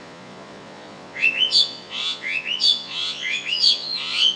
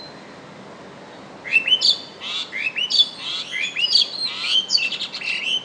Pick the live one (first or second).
second